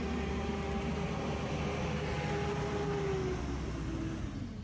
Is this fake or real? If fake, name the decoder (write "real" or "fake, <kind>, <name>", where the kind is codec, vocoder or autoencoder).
real